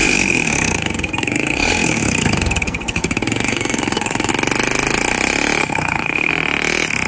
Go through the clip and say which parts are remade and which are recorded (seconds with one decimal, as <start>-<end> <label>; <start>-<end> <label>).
0.0-4.3 remade; 4.3-5.6 recorded; 5.6-6.3 remade; 6.3-7.1 recorded